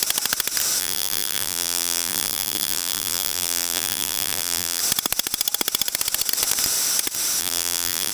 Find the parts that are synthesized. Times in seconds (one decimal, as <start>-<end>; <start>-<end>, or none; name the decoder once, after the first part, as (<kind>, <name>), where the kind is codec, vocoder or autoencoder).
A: 0.8-4.8 (vocoder, BigVGAN v2); 7.4-8.1